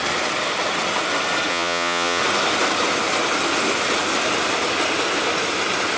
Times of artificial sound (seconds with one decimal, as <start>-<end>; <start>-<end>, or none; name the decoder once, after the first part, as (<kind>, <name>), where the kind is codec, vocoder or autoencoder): 1.5-2.2 (vocoder, Vocos)

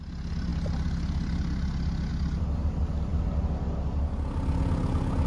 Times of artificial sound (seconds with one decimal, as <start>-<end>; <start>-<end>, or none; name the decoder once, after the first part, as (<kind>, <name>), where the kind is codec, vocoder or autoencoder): none

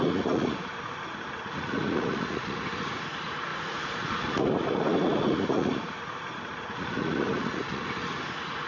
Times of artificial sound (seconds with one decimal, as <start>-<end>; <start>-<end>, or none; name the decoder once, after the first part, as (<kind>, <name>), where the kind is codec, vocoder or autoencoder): 0.0-8.7 (vocoder, Vocos)